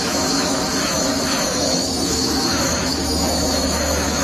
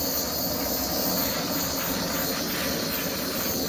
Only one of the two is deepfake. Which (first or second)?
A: first